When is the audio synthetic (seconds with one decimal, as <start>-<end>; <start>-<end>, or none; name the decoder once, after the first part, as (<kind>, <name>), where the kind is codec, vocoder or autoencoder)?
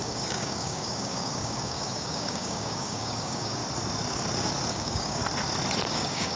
0.0-3.6 (codec, DAC); 4.7-5.2; 5.9-6.4